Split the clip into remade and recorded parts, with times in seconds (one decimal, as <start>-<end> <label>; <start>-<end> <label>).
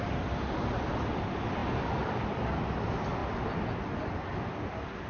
0.0-5.1 recorded